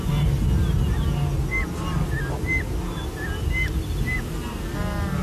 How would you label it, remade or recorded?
recorded